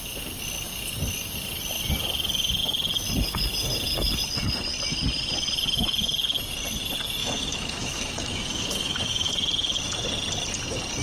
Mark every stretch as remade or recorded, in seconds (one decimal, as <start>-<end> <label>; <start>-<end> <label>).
0.0-7.2 recorded; 7.2-9.3 remade; 9.3-11.0 recorded